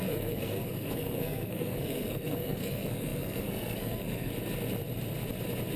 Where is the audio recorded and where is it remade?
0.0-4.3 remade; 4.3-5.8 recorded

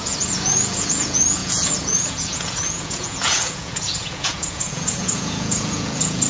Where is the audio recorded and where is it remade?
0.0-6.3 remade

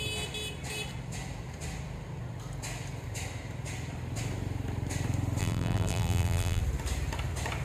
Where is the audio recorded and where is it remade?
0.0-5.4 recorded; 5.4-6.6 remade; 6.6-7.6 recorded

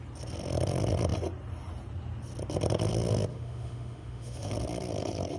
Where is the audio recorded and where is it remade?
0.0-3.3 recorded; 3.3-4.5 remade; 4.5-5.4 recorded

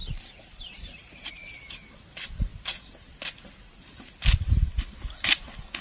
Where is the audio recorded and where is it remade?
0.0-1.3 remade; 1.3-5.8 recorded